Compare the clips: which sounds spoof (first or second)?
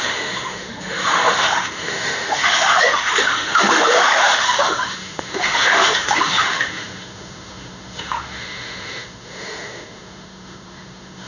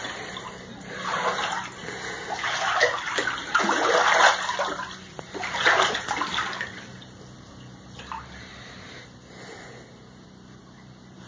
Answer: first